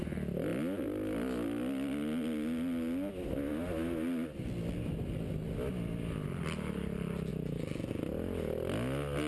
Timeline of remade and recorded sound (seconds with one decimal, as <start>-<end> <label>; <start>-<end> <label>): 0.0-9.3 recorded